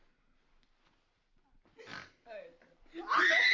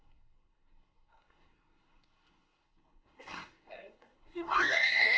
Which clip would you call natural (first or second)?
first